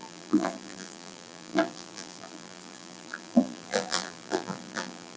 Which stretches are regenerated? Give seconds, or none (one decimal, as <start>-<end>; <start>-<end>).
0.0-5.2

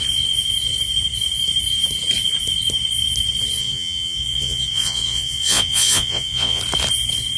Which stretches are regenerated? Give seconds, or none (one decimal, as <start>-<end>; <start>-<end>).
3.6-6.6

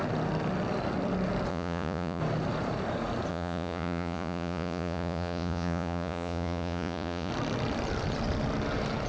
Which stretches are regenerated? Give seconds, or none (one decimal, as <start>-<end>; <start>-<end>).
1.5-2.2; 3.3-7.3

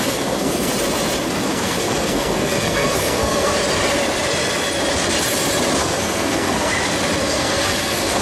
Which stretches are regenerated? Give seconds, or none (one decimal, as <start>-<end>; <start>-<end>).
0.0-0.7; 1.2-3.5; 5.8-6.7; 7.2-8.2

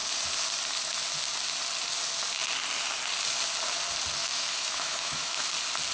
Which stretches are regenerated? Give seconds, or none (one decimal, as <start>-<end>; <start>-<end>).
4.2-5.5

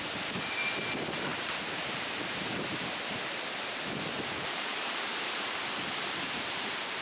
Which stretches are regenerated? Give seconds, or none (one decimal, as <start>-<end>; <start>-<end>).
1.3-5.5

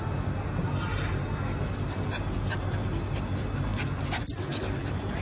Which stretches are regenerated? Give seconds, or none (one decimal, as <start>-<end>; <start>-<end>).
none

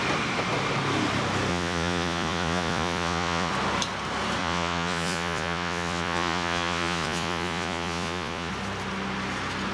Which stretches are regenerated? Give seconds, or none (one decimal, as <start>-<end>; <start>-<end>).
1.5-3.5; 4.4-8.5